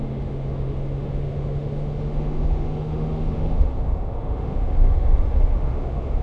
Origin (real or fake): fake